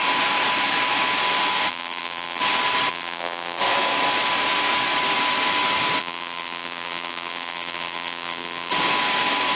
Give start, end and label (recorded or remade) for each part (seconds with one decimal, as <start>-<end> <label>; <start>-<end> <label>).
0.0-1.7 recorded; 1.7-2.4 remade; 2.4-2.9 recorded; 2.9-3.6 remade; 3.6-6.0 recorded; 6.0-8.7 remade; 8.7-9.6 recorded